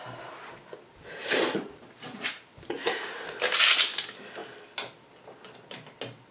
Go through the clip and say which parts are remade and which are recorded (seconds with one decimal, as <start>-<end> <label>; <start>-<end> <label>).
0.0-1.2 recorded; 1.2-3.3 remade; 3.3-6.3 recorded

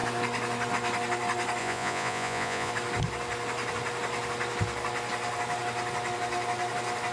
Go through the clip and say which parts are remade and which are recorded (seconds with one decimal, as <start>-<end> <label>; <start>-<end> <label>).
0.0-1.6 recorded; 1.6-2.7 remade; 2.7-7.1 recorded

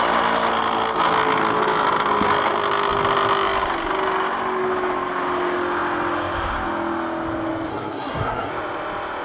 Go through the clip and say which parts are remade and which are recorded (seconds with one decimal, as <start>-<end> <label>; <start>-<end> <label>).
0.0-7.7 recorded; 7.7-8.5 remade; 8.5-9.2 recorded

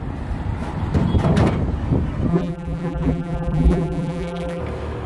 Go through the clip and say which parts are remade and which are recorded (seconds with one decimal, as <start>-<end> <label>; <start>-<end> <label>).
0.0-2.3 recorded; 2.3-4.6 remade; 4.6-5.1 recorded

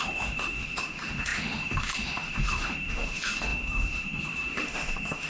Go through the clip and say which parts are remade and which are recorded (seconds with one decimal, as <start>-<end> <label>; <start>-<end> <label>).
0.0-5.3 remade

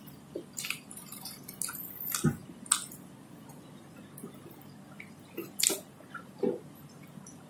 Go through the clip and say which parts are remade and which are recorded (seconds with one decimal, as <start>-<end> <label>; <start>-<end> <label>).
0.0-7.5 recorded

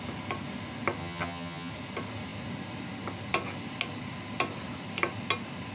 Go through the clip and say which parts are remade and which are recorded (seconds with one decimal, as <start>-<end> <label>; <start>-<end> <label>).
0.0-1.0 recorded; 1.0-1.7 remade; 1.7-5.7 recorded

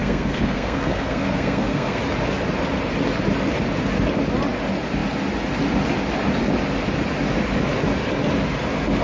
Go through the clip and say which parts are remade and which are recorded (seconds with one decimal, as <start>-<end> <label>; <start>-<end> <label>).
0.0-2.0 remade; 2.0-9.0 recorded